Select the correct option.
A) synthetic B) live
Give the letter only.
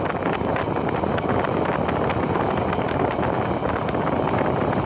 B